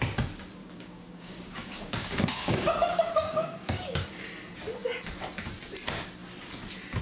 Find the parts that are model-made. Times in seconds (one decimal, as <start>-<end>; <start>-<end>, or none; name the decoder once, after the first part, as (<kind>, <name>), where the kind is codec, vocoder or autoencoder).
0.6-4.2 (codec, DAC)